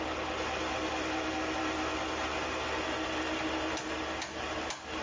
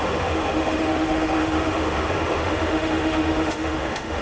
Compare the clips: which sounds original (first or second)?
first